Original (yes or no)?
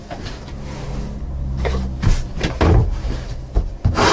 yes